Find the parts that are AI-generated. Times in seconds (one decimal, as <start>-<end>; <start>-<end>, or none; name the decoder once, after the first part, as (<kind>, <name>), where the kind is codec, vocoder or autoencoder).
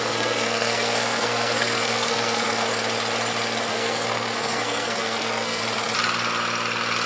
0.0-2.7 (codec, SNAC); 3.7-5.6